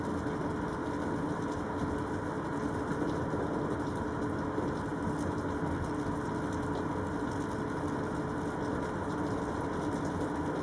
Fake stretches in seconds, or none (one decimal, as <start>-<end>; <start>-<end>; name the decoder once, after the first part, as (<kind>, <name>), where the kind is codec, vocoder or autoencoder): none